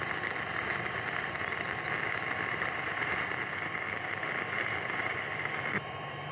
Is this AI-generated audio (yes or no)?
yes